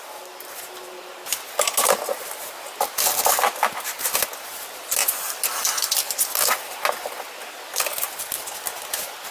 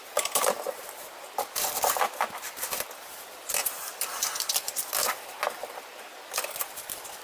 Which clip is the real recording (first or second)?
first